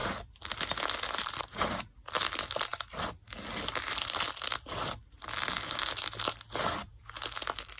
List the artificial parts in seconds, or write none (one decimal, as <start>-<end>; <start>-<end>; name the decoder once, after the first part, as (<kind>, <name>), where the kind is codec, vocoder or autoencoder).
none